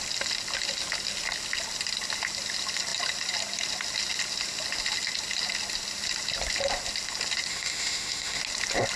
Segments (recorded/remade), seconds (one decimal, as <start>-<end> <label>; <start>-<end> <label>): 0.0-7.5 recorded; 7.5-8.4 remade; 8.4-9.0 recorded